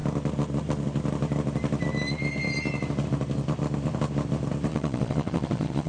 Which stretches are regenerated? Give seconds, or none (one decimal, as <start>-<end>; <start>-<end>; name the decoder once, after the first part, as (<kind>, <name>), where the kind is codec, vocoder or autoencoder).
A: 4.7-5.9 (vocoder, Vocos)